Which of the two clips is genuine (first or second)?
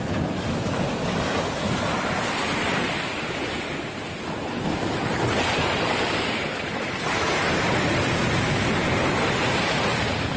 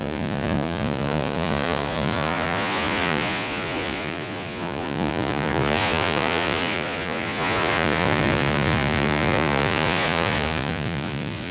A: first